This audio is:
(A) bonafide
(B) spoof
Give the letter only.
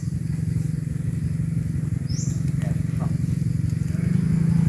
A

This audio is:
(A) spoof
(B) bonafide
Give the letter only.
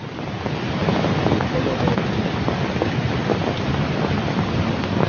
B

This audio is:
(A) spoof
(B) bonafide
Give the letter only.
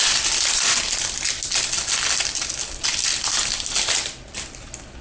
B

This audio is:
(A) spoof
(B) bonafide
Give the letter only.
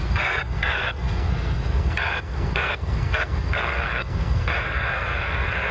A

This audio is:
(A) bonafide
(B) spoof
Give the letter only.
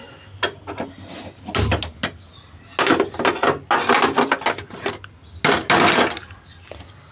A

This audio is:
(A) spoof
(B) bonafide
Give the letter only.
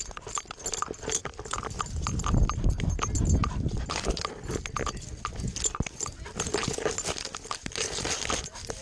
B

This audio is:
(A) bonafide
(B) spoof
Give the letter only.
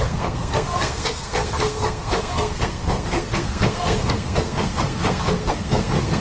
B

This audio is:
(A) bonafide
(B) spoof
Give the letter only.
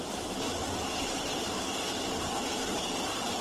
A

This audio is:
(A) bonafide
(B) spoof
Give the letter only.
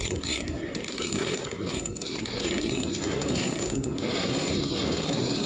B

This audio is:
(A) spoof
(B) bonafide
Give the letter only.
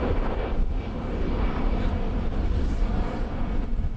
B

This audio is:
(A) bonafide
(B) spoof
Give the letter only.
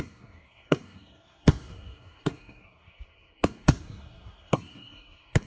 B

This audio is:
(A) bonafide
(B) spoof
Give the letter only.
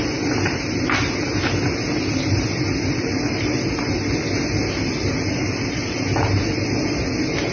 A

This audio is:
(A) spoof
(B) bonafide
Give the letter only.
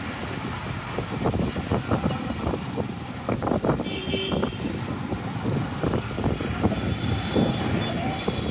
B